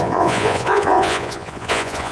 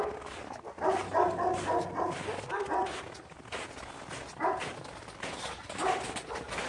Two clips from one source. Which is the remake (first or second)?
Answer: first